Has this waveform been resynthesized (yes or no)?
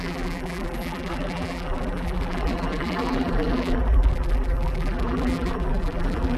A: yes